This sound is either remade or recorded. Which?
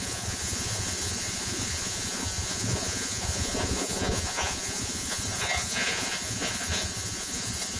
remade